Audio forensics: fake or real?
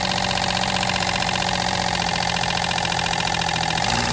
fake